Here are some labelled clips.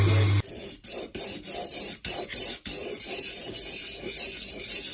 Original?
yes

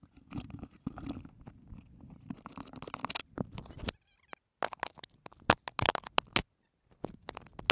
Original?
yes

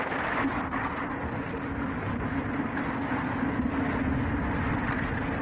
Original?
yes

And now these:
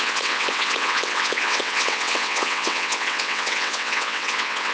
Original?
no